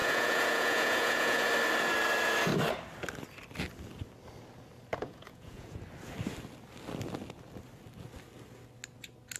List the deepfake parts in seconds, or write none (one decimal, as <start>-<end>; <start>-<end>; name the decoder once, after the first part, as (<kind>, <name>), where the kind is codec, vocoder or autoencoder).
0.0-1.5 (vocoder, Vocos); 4.9-5.8